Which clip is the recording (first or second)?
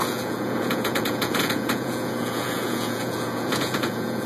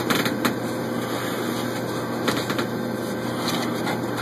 second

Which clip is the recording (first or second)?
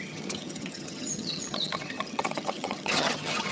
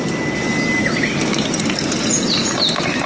second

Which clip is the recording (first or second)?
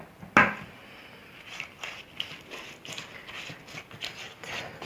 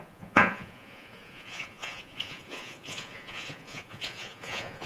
first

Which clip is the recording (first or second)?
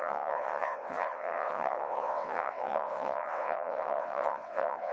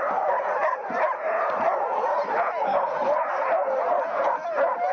second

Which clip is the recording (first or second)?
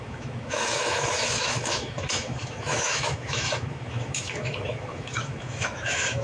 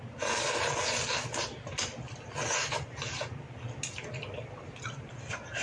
second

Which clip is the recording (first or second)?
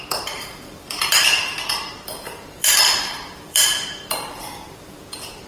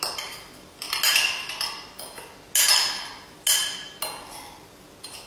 second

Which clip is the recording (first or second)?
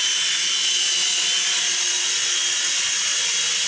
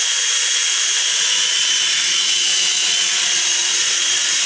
first